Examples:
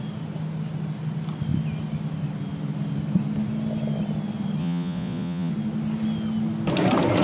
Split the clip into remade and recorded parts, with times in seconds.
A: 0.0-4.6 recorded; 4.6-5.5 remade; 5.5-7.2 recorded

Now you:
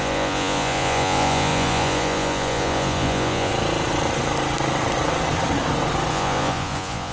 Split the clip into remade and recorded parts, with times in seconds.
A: 0.0-3.5 remade; 3.5-6.1 recorded; 6.1-7.1 remade